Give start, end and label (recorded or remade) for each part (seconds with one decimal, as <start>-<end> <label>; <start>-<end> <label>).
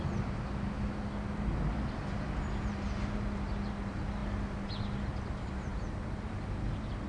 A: 0.0-7.1 recorded